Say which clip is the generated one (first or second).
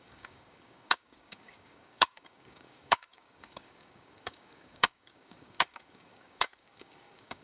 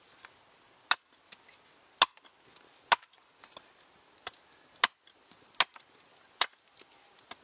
first